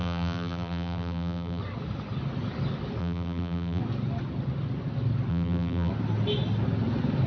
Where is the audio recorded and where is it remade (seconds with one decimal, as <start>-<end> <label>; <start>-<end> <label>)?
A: 0.0-1.6 remade; 1.6-3.0 recorded; 3.0-3.8 remade; 3.8-5.3 recorded; 5.3-5.9 remade; 5.9-7.3 recorded